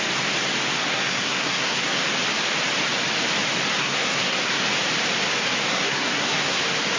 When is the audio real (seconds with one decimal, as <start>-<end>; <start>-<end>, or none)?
0.0-0.8; 2.0-3.8; 4.6-5.7; 6.6-7.0